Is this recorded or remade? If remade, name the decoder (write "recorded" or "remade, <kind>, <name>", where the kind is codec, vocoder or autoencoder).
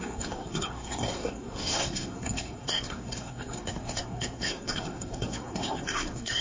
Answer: remade, codec, SNAC